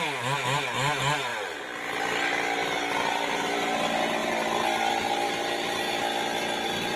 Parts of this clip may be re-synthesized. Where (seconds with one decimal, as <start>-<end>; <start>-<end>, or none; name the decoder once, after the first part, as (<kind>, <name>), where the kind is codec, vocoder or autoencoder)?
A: 4.2-4.9 (vocoder, BigVGAN v2)

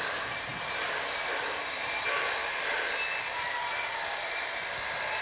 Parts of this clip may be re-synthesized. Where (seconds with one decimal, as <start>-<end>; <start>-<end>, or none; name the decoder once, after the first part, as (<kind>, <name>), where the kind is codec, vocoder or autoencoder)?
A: 0.0-2.4 (vocoder, BigVGAN v2); 3.5-5.2

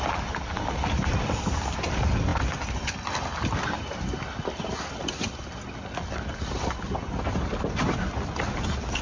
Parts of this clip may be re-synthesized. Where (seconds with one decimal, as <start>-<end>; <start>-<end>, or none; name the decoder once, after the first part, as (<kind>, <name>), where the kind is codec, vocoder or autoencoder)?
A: none

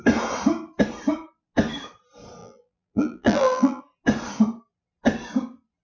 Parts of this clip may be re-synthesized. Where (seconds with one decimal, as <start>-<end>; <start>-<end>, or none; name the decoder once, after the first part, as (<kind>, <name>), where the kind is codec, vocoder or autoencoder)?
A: 2.4-3.8 (vocoder, BigVGAN v2)

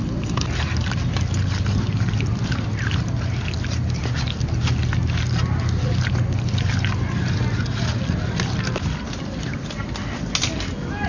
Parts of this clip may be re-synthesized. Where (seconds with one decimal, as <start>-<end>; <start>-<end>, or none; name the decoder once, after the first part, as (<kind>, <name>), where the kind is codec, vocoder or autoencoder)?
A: none